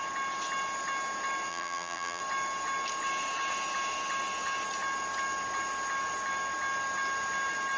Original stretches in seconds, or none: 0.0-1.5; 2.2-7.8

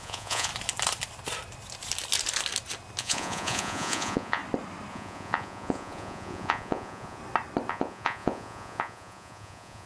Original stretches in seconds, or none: 0.5-3.0; 4.4-4.9; 7.2-7.7

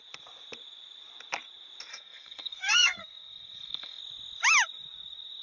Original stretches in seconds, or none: 0.0-1.9; 4.0-5.4